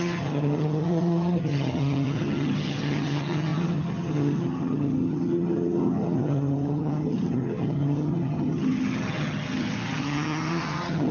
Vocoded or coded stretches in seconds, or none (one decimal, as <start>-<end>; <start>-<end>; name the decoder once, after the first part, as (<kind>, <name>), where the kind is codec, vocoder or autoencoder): 0.0-11.1 (vocoder, HiFi-GAN)